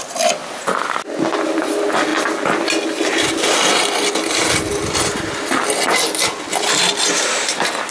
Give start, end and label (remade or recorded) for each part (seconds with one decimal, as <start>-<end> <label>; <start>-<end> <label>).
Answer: 0.0-7.9 recorded